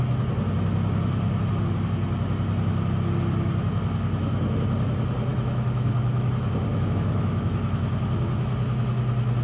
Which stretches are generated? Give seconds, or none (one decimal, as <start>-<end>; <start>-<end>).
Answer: 5.3-6.3; 6.7-7.5